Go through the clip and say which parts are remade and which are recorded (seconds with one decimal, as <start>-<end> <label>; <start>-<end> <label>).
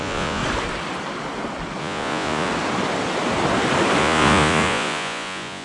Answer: 0.0-0.4 remade; 0.4-1.8 recorded; 1.8-2.5 remade; 2.5-4.0 recorded; 4.0-5.6 remade